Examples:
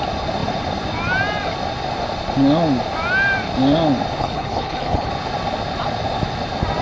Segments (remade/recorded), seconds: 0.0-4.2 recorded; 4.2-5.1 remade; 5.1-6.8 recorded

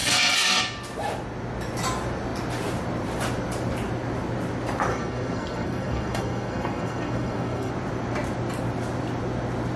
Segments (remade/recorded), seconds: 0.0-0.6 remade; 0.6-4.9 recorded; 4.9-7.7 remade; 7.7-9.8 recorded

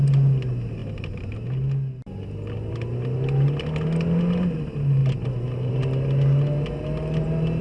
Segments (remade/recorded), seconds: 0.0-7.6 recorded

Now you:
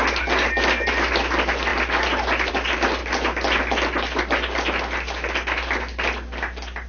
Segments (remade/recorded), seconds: 0.0-6.9 recorded

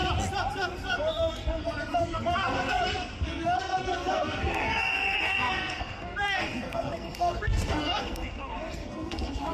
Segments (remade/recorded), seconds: 0.0-0.5 recorded; 0.5-9.5 remade

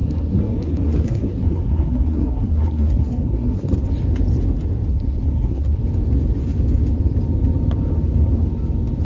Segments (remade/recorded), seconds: 0.0-3.7 remade; 3.7-4.9 recorded; 4.9-5.8 remade; 5.8-9.0 recorded

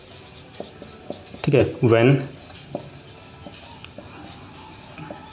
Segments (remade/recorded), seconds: 0.0-5.3 recorded

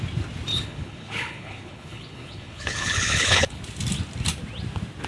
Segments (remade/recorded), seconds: 0.0-0.5 recorded; 0.5-3.6 remade; 3.6-5.1 recorded